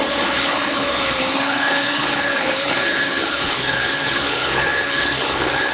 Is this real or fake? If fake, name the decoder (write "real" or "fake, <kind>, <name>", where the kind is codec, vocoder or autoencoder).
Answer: fake, codec, HILCodec